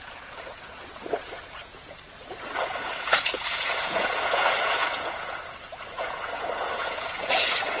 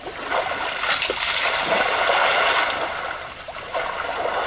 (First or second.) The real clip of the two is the second